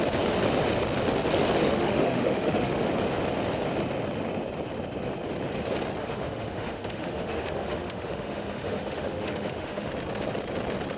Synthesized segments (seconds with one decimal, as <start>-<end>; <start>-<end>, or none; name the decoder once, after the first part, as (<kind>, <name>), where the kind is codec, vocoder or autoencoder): 1.6-2.8 (autoencoder, DAC-VAE); 6.0-9.9